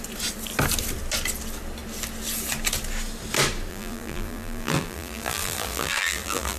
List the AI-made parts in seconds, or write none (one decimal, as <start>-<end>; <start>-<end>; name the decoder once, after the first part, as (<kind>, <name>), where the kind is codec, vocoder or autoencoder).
3.7-6.6 (vocoder, BigVGAN v2)